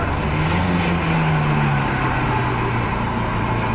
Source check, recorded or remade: recorded